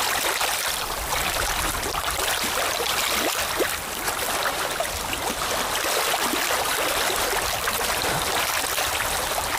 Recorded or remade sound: recorded